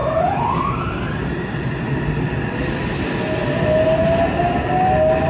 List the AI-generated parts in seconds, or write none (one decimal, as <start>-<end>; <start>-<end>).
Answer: 0.0-1.7